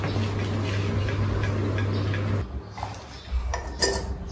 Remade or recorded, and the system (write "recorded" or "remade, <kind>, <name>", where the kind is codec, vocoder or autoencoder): recorded